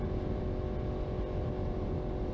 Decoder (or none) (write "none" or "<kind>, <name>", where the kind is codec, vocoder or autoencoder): none